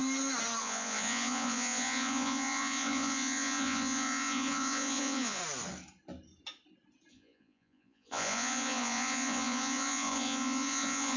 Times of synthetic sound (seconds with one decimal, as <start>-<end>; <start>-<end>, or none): 0.6-5.4; 7.1-11.2